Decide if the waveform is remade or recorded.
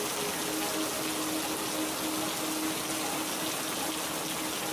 recorded